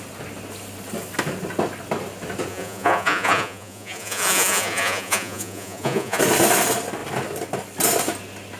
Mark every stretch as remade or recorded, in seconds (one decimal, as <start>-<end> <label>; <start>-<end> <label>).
0.0-2.5 recorded; 2.5-6.2 remade; 6.2-8.6 recorded